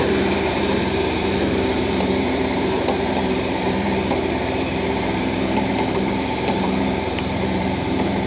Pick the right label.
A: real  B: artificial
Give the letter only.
B